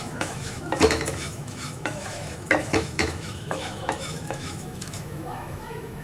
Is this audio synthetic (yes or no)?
yes